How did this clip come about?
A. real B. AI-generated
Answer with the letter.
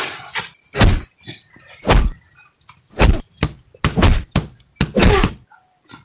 A